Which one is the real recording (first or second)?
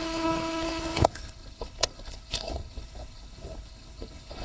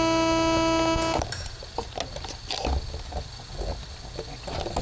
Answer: second